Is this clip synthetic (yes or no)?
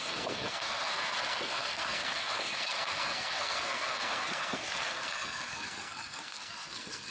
yes